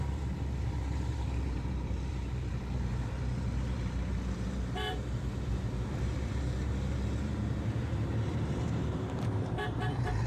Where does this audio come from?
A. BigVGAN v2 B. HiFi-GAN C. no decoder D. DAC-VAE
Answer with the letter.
A